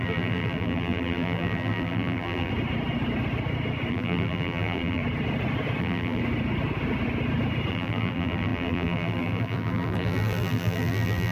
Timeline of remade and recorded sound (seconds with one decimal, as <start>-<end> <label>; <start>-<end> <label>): 0.0-2.5 remade; 2.5-3.9 recorded; 3.9-5.0 remade; 5.0-5.8 recorded; 5.8-6.2 remade; 6.2-7.7 recorded; 7.7-11.3 remade